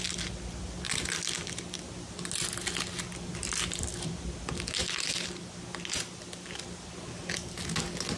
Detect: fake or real real